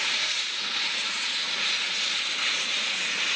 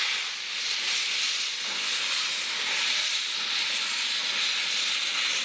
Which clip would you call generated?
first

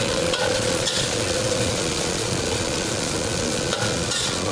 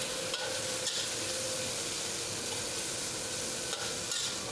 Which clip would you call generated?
first